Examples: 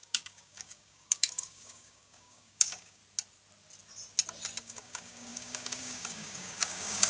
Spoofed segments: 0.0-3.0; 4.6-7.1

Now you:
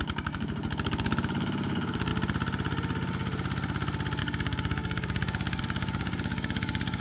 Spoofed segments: 0.0-2.1; 4.2-7.0